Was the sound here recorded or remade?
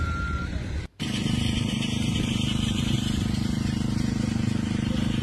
remade